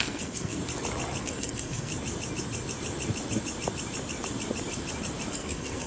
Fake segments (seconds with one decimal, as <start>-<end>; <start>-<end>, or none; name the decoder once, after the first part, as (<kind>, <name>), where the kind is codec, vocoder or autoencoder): 0.0-0.6 (codec, SNAC); 1.2-1.9; 5.3-5.9